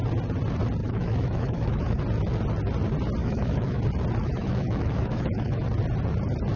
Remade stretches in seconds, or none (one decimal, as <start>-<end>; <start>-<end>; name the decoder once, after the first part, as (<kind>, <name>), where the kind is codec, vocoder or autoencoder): 0.8-2.0 (autoencoder, DAC-VAE); 3.2-3.8; 4.2-5.6